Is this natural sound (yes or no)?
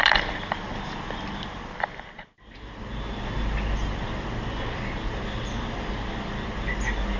yes